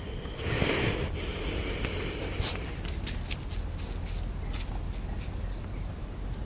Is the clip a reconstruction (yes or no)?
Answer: no